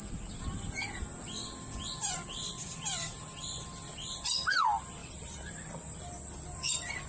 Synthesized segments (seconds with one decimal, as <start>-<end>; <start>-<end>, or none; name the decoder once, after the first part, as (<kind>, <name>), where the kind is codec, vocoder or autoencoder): 5.0-7.1 (vocoder, BigVGAN v2)